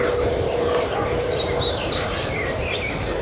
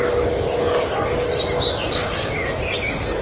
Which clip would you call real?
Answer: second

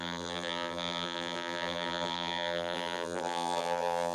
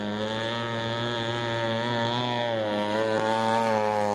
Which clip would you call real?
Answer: second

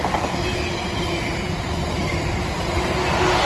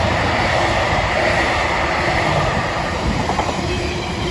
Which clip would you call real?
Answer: first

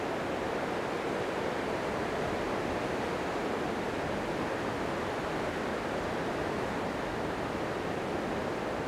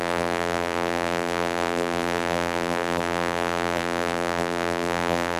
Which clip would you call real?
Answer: first